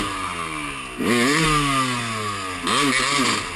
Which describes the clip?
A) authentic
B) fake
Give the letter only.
A